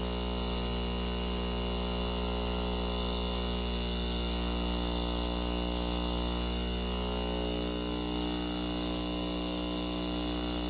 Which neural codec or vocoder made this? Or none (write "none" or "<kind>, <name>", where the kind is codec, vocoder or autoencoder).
none